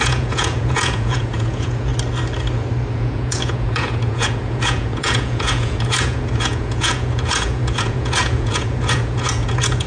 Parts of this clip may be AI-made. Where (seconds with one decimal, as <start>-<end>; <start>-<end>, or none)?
0.0-1.9; 2.9-9.9